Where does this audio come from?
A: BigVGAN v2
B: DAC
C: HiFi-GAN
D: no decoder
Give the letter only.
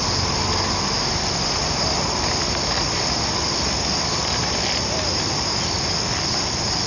D